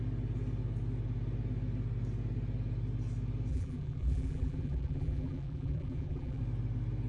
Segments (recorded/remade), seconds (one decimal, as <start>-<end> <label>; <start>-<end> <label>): 0.0-3.5 recorded; 3.5-6.4 remade; 6.4-7.1 recorded